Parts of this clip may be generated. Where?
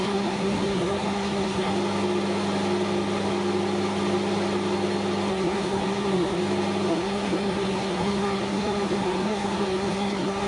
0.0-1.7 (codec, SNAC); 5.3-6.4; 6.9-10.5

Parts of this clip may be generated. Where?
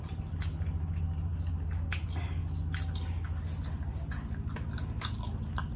none